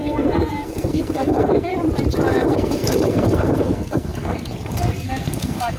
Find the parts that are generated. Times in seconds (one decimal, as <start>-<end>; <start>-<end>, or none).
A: 0.0-1.7; 2.3-5.8

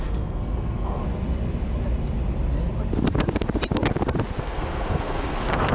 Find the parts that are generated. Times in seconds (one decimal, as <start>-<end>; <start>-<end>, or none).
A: 0.0-1.0; 4.4-5.7

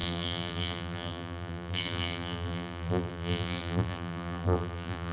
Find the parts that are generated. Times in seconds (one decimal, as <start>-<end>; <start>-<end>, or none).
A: 0.0-5.1

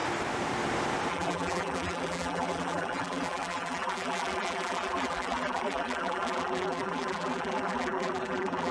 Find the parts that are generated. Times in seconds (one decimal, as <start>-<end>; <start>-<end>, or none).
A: 1.1-8.7